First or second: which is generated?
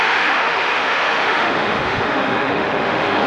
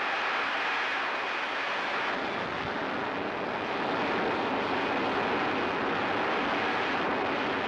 first